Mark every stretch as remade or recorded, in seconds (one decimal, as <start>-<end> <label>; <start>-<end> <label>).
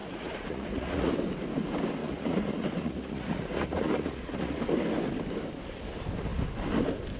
0.0-1.1 remade; 1.1-2.0 recorded; 2.0-4.6 remade; 4.6-7.2 recorded